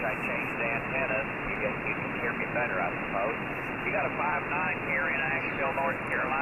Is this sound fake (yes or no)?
no